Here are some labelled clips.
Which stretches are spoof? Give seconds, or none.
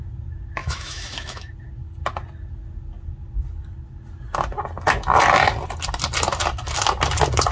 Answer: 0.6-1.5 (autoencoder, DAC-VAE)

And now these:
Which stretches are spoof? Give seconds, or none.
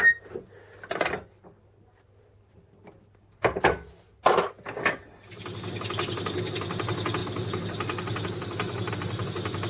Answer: none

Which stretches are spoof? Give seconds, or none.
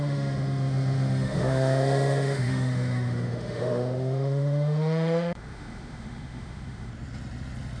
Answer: 0.0-6.9 (autoencoder, DAC-VAE)